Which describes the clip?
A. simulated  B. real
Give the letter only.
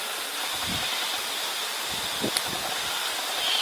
B